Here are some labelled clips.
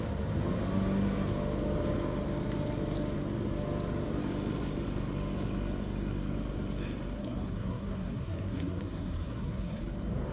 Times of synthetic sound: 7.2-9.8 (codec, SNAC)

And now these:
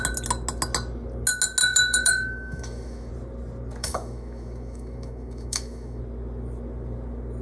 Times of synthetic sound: 1.6-3.1 (autoencoder, DAC-VAE); 3.8-6.0

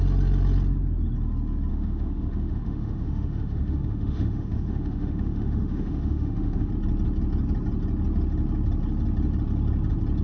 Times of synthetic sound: 1.7-6.7 (autoencoder, DAC-VAE)

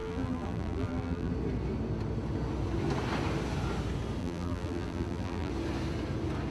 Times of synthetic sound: 0.0-1.3 (vocoder, BigVGAN v2); 4.2-5.5

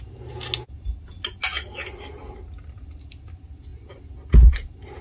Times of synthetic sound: none

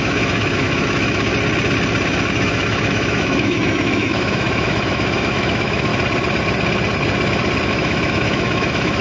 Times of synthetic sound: 0.0-1.3 (autoencoder, DAC-VAE); 2.3-5.9; 7.7-9.0